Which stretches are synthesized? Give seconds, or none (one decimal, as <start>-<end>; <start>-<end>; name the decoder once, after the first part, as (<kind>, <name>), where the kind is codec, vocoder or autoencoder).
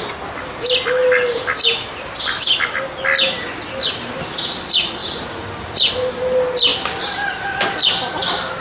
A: none